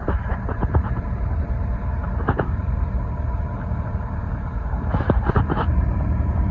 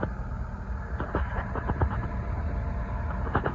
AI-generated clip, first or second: first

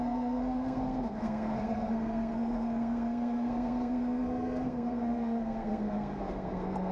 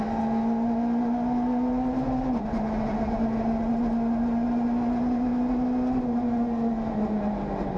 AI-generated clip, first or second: first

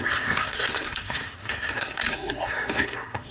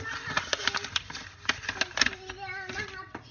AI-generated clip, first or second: first